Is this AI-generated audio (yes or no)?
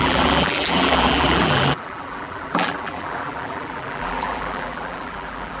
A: yes